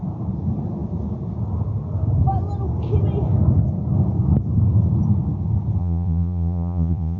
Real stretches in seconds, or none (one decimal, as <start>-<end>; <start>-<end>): 0.0-5.8